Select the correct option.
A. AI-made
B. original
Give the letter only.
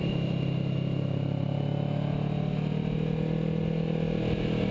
B